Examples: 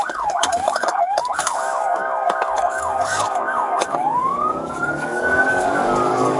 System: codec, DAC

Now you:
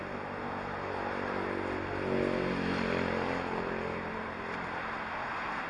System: none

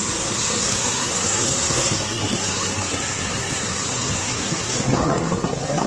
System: codec, SNAC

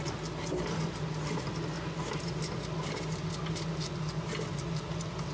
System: none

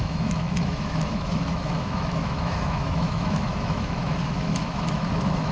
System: autoencoder, DAC-VAE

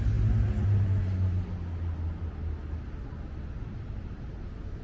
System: none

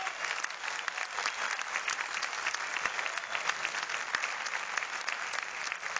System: none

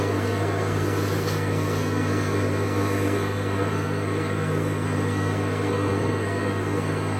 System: codec, SNAC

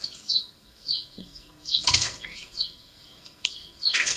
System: codec, SNAC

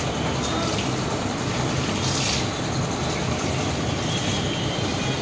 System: none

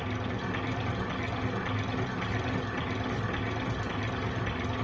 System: none